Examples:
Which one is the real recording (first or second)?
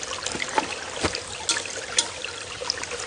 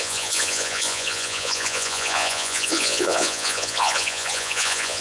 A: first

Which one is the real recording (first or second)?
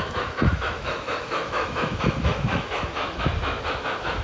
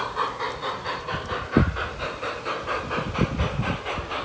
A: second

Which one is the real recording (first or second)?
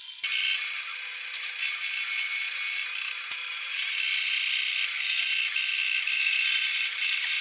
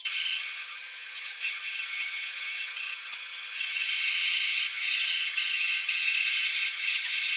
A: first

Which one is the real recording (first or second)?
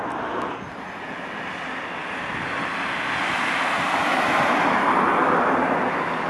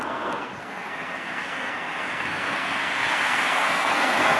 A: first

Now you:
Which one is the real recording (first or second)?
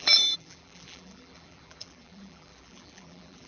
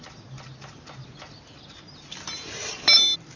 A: second